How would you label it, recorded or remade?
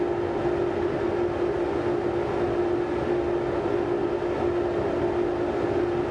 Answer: recorded